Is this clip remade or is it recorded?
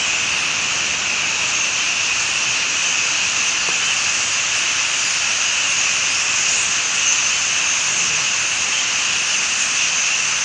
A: recorded